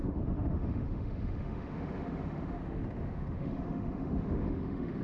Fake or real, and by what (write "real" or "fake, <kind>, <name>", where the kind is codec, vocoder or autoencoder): fake, autoencoder, DAC-VAE